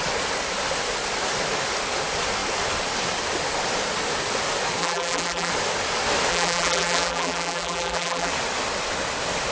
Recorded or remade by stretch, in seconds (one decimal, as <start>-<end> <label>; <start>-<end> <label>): 0.0-4.8 recorded; 4.8-5.5 remade; 5.5-6.3 recorded; 6.3-8.3 remade; 8.3-9.5 recorded